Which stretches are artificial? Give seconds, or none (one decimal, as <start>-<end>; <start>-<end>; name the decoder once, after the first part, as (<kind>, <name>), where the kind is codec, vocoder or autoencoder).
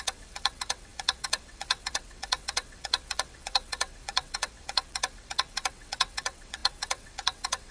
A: 0.0-7.7 (vocoder, WaveNeXt)